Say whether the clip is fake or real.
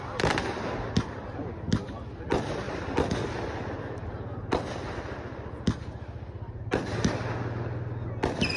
real